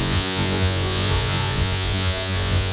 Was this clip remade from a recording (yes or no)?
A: yes